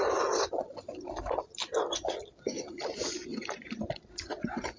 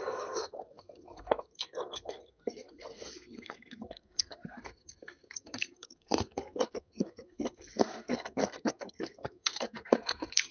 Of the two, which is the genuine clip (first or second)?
first